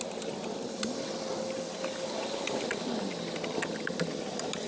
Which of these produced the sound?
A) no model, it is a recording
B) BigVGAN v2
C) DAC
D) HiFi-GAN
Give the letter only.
A